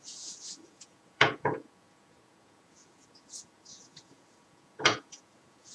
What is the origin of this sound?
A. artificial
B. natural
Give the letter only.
A